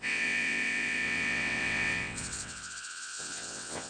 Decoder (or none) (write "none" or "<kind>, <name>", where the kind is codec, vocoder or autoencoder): vocoder, WaveNeXt